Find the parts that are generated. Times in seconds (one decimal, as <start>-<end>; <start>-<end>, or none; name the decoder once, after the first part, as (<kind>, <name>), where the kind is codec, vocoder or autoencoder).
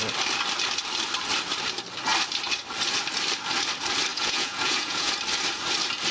4.1-5.1 (vocoder, Vocos)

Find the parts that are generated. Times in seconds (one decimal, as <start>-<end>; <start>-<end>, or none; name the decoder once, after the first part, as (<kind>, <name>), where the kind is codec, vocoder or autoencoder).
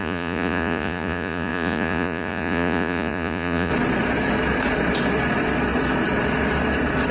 0.0-3.7 (vocoder, Vocos)